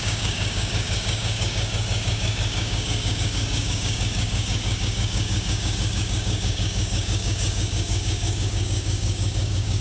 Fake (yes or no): yes